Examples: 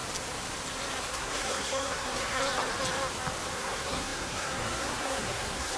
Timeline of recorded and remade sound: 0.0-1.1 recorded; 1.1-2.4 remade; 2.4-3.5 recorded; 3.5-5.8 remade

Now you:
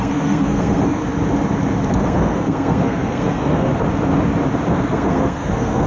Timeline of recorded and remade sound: 0.0-1.0 remade; 1.0-1.9 recorded; 1.9-3.7 remade; 3.7-4.7 recorded; 4.7-5.9 remade

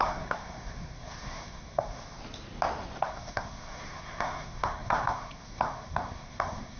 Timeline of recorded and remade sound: 0.0-2.2 remade; 2.2-3.0 recorded; 3.0-6.8 remade

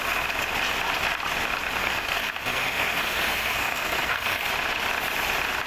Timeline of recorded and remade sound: 0.0-1.8 recorded; 1.8-4.5 remade; 4.5-5.7 recorded

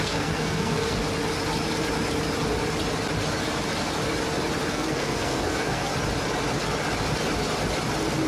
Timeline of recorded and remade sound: 0.0-1.0 remade; 1.0-4.7 recorded; 4.7-5.9 remade; 5.9-8.3 recorded

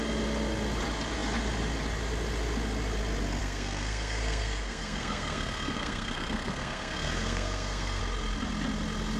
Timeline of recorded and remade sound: 0.0-3.4 recorded; 3.4-8.0 remade; 8.0-9.2 recorded

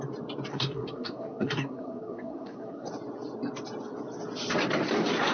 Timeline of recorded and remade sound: 0.0-0.5 recorded; 0.5-2.9 remade; 2.9-5.3 recorded

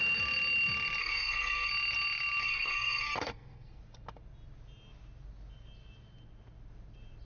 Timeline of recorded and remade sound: 0.0-1.0 recorded; 1.0-1.7 remade; 1.7-2.4 recorded; 2.4-3.8 remade; 3.8-7.2 recorded